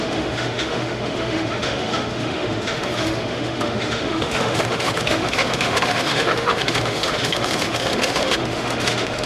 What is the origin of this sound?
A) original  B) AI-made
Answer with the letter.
B